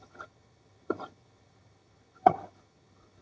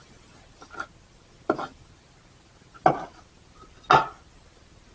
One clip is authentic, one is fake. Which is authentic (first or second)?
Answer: second